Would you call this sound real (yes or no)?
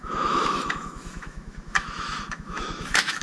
no